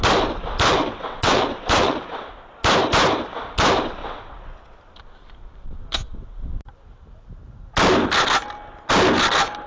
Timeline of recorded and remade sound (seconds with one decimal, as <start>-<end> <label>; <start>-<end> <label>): 0.0-0.8 recorded; 0.8-2.6 remade; 2.6-4.0 recorded; 4.0-4.8 remade; 4.8-6.1 recorded; 6.1-6.6 remade; 6.6-9.7 recorded